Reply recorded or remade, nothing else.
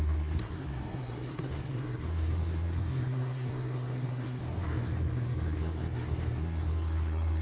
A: remade